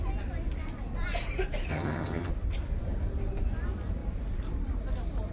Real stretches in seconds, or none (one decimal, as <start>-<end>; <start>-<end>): 0.0-1.7; 2.3-5.3